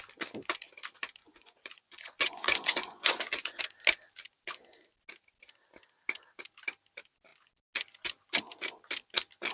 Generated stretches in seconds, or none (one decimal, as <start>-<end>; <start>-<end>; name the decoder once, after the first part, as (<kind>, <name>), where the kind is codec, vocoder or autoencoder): 1.2-3.6 (vocoder, Vocos)